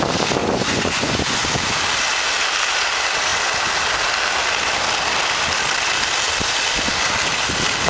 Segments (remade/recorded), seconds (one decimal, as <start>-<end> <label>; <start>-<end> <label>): 0.0-0.4 recorded; 0.4-1.4 remade; 1.4-7.9 recorded